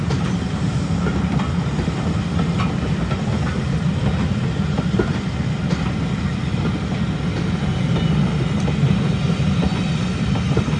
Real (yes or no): yes